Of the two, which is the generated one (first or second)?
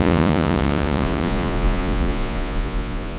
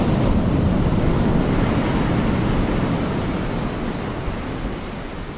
first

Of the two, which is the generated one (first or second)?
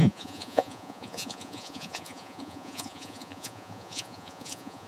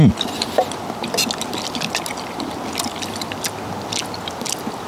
first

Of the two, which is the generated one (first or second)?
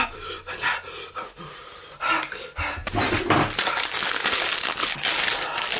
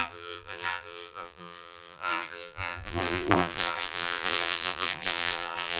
second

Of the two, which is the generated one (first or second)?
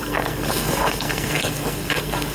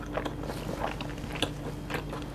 first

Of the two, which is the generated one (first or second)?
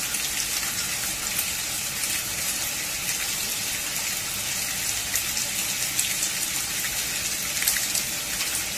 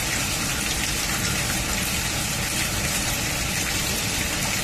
second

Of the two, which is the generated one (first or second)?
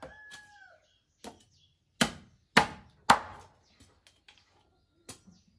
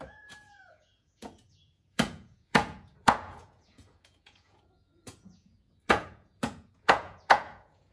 second